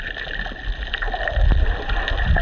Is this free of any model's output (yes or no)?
yes